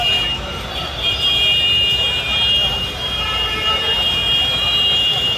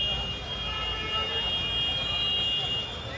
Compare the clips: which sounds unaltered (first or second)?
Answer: second